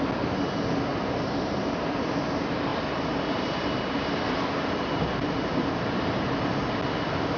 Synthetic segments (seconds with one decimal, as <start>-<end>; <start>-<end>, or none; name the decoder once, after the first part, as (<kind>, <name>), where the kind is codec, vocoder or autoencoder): 0.9-2.0 (vocoder, BigVGAN v2); 2.7-6.4